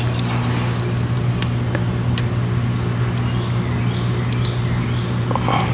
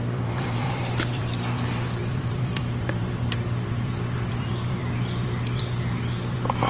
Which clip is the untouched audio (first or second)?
first